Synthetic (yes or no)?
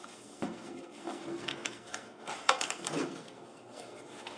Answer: yes